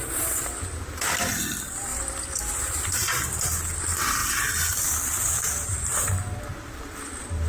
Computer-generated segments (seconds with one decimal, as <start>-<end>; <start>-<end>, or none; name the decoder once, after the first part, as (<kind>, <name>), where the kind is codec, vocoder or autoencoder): none